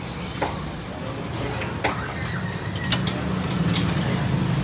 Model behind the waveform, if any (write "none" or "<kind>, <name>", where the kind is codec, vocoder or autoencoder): none